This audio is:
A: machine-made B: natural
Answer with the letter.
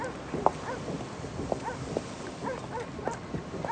B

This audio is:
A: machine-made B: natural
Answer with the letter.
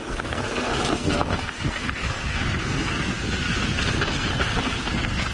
A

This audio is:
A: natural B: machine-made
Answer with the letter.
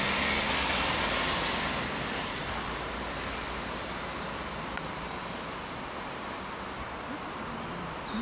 A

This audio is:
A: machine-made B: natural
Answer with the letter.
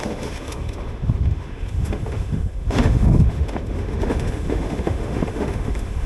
A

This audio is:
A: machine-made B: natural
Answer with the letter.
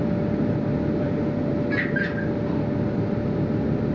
B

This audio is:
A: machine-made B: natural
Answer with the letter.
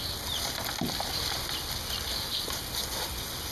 B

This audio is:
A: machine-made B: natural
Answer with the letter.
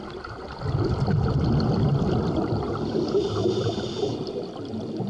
B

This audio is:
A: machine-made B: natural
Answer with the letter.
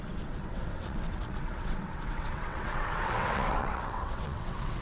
A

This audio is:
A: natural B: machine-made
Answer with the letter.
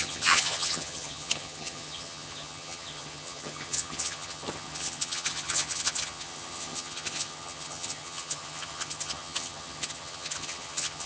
B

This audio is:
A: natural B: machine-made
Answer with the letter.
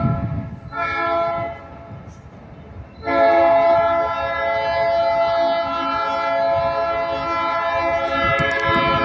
A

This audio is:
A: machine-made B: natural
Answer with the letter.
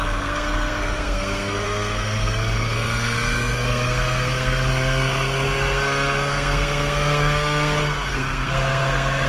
A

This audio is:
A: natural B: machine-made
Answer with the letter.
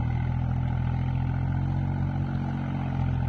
A